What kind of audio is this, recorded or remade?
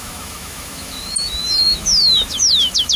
remade